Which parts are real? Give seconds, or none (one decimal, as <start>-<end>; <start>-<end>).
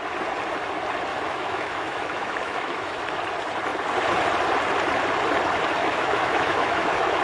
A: 0.0-1.1; 3.2-5.8